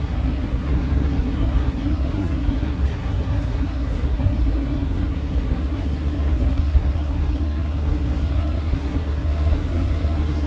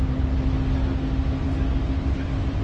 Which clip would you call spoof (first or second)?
first